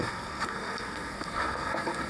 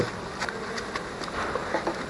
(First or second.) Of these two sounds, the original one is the second